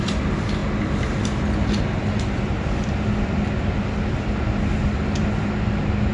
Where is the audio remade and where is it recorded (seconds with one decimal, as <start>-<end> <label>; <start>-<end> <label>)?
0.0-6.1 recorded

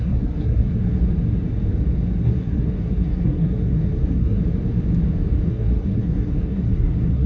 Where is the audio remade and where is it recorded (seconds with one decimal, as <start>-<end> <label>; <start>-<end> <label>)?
0.0-1.0 remade; 1.0-2.2 recorded; 2.2-4.4 remade; 4.4-5.5 recorded; 5.5-7.3 remade

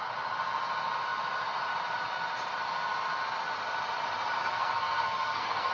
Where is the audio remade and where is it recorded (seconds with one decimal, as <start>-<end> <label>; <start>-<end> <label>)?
0.0-4.4 recorded; 4.4-5.7 remade

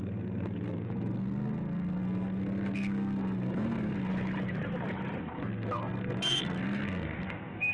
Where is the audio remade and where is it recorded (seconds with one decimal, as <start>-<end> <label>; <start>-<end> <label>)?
0.0-4.1 remade; 4.1-5.2 recorded; 5.2-7.7 remade

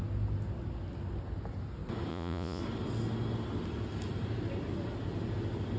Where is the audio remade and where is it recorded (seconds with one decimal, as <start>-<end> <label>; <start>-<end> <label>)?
0.0-2.1 recorded; 2.1-2.6 remade; 2.6-5.8 recorded